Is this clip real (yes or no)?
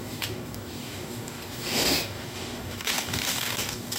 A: no